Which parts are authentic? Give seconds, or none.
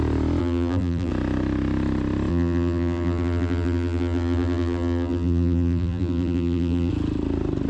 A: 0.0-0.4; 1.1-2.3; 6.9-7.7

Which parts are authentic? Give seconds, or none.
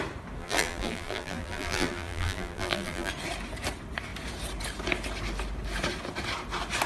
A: 0.0-0.4; 3.1-6.9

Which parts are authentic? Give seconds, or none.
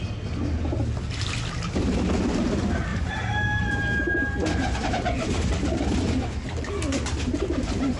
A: 0.0-2.9; 6.2-8.0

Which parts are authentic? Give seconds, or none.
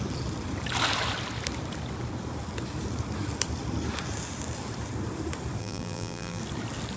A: 0.0-5.6; 6.4-7.0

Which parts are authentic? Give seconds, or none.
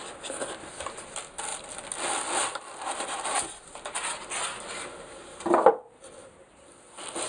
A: 0.0-7.3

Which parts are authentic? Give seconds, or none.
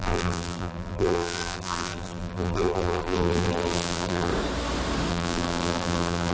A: 4.3-5.1